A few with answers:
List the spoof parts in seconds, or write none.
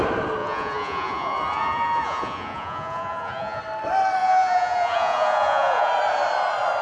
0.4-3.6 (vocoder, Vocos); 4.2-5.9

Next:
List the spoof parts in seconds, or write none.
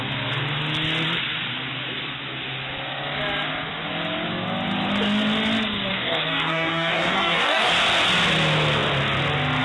5.9-7.7 (codec, DAC)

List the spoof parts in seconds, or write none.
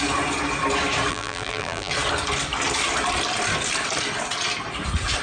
1.1-1.9 (vocoder, BigVGAN v2)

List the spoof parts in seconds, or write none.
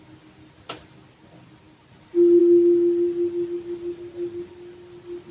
none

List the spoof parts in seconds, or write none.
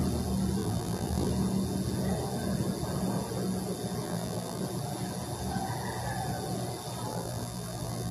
0.6-1.3 (vocoder, BigVGAN v2); 4.0-4.6; 7.1-8.1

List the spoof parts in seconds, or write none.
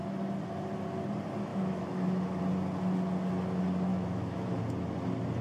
1.5-2.4 (autoencoder, DAC-VAE); 3.9-4.6